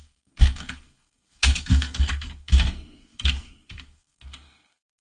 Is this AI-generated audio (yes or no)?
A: yes